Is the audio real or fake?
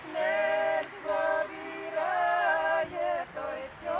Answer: real